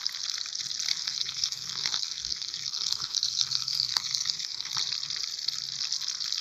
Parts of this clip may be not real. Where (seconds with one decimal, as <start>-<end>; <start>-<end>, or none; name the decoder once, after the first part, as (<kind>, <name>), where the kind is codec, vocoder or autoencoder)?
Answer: 0.9-4.7 (codec, SNAC)